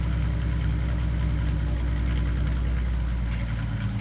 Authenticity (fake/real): real